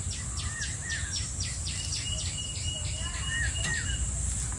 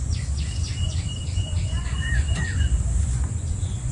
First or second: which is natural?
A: first